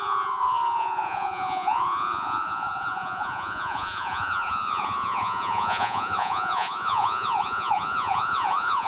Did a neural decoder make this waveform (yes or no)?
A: yes